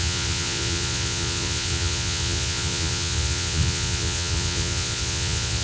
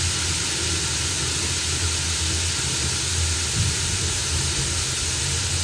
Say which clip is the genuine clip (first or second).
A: second